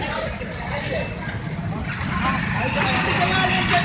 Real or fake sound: real